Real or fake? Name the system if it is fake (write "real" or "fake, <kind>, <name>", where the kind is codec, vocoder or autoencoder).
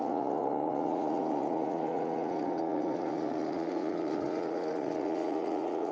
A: fake, vocoder, Vocos